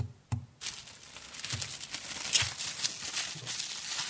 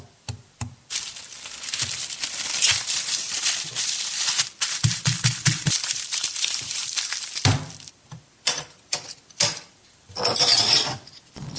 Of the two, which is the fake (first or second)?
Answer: second